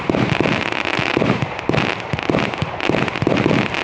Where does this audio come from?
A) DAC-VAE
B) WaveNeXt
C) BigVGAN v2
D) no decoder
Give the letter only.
D